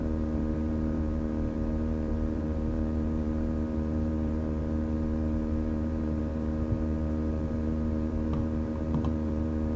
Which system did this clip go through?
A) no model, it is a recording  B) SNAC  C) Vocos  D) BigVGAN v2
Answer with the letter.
D